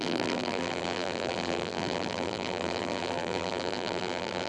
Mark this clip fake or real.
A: fake